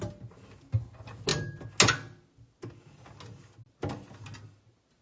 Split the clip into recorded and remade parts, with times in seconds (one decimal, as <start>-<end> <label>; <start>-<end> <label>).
0.0-5.0 recorded